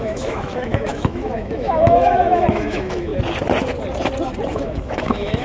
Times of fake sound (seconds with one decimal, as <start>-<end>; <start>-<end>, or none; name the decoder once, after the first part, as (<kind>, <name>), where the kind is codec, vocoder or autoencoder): 0.0-3.1 (autoencoder, DAC-VAE); 4.5-5.4